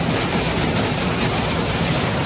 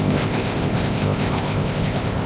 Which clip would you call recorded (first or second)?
first